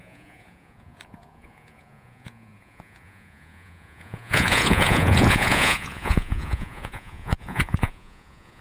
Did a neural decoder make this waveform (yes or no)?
yes